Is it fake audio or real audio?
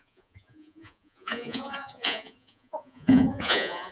fake